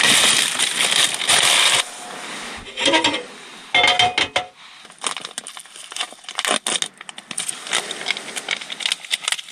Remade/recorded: recorded